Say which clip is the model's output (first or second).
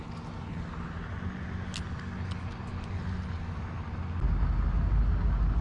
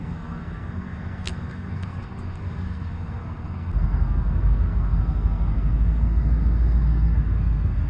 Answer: second